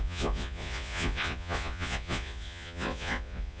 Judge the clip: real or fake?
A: fake